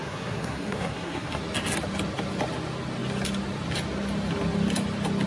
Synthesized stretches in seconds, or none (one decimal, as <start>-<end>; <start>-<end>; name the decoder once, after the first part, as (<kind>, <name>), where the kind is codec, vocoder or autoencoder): 0.0-1.4 (codec, SNAC)